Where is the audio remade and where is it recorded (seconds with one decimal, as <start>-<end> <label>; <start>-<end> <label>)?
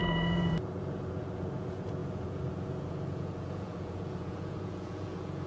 0.0-5.5 remade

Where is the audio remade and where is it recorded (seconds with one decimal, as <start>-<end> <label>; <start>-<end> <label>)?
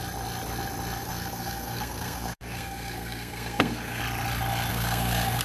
0.0-1.0 recorded; 1.0-4.0 remade; 4.0-4.7 recorded; 4.7-5.4 remade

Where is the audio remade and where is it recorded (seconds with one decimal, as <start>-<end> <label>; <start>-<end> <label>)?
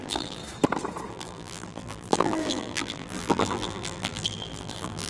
0.0-0.4 remade; 0.4-1.1 recorded; 1.1-5.1 remade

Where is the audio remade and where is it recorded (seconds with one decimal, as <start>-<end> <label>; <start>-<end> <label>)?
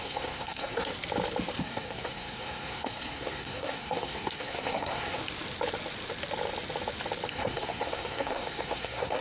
0.0-0.9 remade; 0.9-1.6 recorded; 1.6-5.2 remade; 5.2-7.3 recorded; 7.3-9.2 remade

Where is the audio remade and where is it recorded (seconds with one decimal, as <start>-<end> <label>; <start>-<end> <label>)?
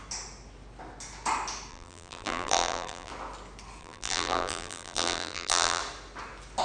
0.0-1.7 recorded; 1.7-3.1 remade; 3.1-3.8 recorded; 3.8-5.8 remade; 5.8-6.6 recorded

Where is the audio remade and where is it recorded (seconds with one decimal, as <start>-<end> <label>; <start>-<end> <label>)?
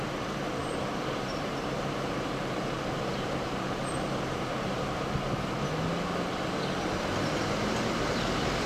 0.0-0.6 recorded; 0.6-4.8 remade; 4.8-8.7 recorded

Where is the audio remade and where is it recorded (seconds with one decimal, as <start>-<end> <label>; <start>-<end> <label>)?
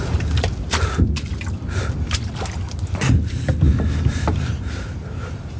0.0-5.6 recorded